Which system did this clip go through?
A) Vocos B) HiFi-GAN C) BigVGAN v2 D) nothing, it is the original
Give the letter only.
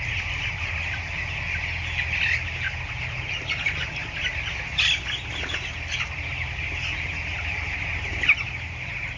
D